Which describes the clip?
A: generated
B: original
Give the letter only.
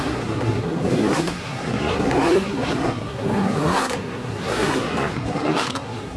A